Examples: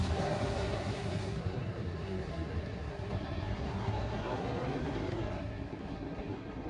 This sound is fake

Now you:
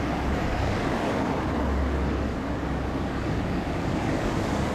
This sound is fake